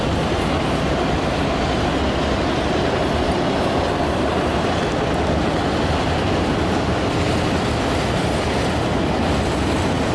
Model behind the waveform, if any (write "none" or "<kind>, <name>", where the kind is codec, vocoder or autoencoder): none